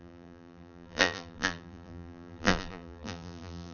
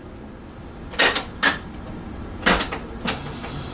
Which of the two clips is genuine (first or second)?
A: second